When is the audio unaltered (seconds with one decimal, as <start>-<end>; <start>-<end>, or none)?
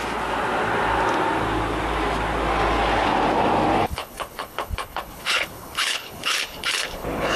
0.0-3.8